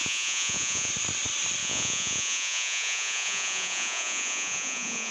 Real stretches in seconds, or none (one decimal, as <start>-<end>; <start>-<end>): 0.9-1.6